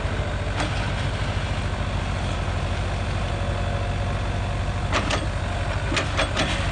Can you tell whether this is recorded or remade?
recorded